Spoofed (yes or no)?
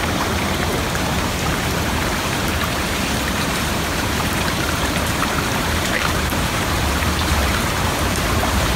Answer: yes